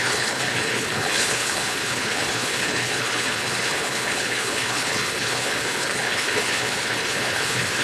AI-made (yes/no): yes